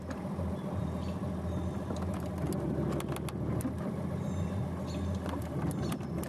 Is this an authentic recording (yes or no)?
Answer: yes